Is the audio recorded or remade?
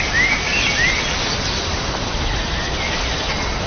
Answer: recorded